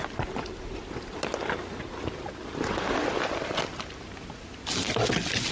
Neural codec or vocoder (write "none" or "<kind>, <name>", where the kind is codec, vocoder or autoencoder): none